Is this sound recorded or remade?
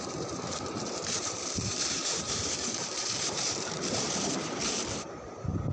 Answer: remade